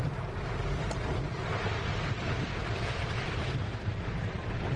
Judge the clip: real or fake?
fake